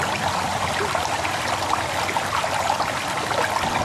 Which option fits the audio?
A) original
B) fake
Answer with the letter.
A